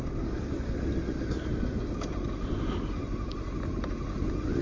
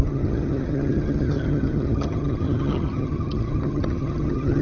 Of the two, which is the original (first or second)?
first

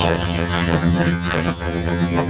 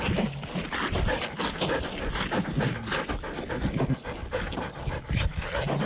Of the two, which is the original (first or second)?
second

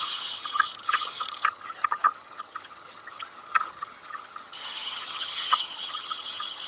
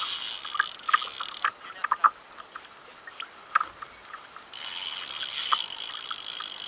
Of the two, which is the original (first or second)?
second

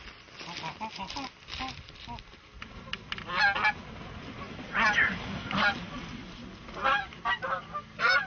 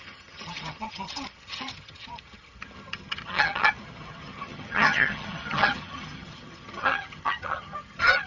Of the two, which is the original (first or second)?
first